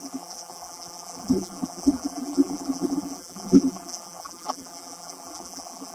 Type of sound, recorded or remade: remade